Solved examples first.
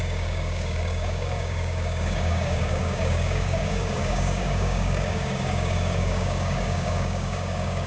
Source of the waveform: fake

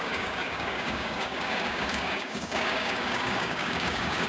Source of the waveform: fake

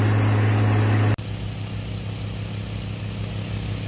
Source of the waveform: real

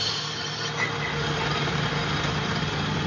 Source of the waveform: real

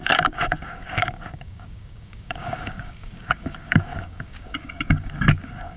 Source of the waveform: fake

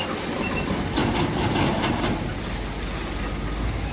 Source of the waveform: real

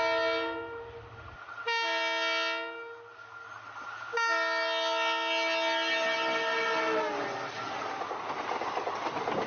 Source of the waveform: real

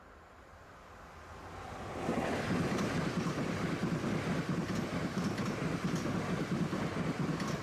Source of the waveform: real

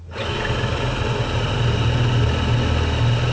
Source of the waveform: real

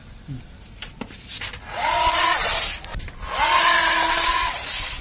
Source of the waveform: real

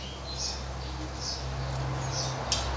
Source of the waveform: real